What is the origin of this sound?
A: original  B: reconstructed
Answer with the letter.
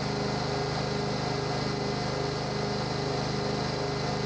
A